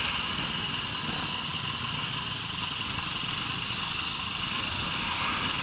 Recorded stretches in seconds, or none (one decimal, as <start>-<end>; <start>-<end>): 0.0-5.6